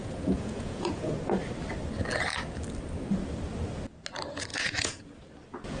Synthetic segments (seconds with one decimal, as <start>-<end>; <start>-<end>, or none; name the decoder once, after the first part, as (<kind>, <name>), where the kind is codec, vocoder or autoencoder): 0.0-1.1 (vocoder, Vocos); 4.5-5.0

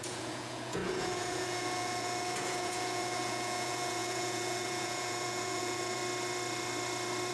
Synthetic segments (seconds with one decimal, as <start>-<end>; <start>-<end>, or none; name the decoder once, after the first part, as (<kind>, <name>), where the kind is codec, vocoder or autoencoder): 0.0-6.0 (vocoder, Vocos)

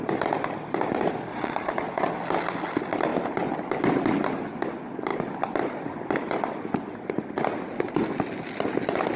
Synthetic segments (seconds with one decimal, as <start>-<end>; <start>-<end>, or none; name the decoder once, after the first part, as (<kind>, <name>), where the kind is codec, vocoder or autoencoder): 1.3-2.1 (vocoder, Vocos)

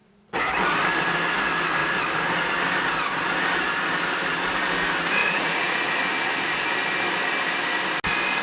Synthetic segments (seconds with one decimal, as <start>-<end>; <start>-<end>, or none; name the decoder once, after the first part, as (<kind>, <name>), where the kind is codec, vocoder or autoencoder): 0.0-0.5 (vocoder, Vocos); 5.2-6.1

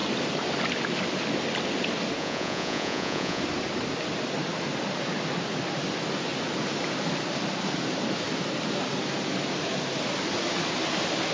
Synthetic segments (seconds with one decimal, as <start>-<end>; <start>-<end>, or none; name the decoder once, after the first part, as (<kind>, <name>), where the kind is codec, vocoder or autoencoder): 2.2-3.4 (vocoder, Vocos)